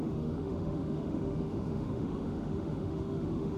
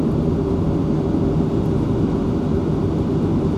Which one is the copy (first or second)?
first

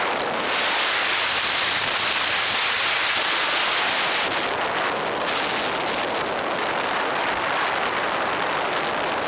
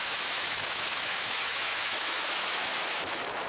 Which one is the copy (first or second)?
second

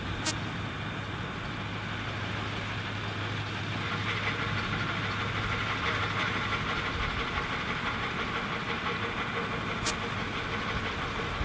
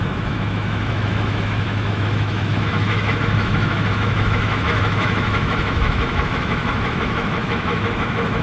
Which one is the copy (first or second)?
second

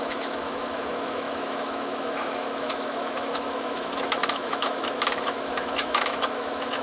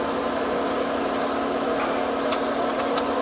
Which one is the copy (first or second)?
first